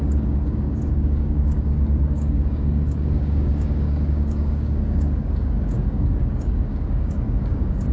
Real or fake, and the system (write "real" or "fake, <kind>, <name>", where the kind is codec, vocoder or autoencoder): fake, codec, DAC